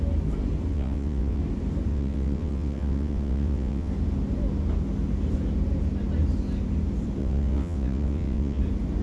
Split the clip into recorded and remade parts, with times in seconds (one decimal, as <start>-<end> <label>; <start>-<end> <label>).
0.0-0.7 recorded; 0.7-1.4 remade; 1.4-1.9 recorded; 1.9-3.9 remade; 3.9-7.2 recorded; 7.2-8.6 remade; 8.6-9.0 recorded

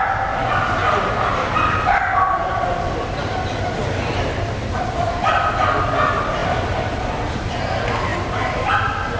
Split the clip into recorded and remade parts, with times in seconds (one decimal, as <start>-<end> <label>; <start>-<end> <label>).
0.0-0.8 recorded; 0.8-3.6 remade; 3.6-6.4 recorded; 6.4-7.6 remade; 7.6-9.2 recorded

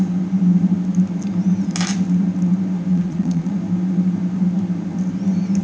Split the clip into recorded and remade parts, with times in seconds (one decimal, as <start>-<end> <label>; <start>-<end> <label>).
0.0-2.9 recorded; 2.9-3.5 remade; 3.5-5.6 recorded

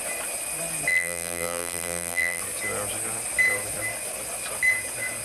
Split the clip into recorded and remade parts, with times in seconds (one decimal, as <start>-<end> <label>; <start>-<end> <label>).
0.0-0.9 recorded; 0.9-2.4 remade; 2.4-5.2 recorded

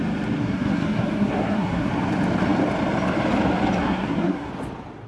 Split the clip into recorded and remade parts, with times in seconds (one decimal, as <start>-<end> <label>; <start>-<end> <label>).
0.0-0.4 recorded; 0.4-1.9 remade; 1.9-3.8 recorded; 3.8-4.5 remade; 4.5-5.1 recorded

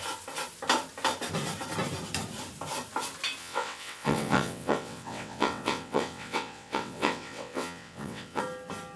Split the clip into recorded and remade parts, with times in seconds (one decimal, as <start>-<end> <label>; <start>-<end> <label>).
0.0-3.4 recorded; 3.4-8.4 remade; 8.4-9.0 recorded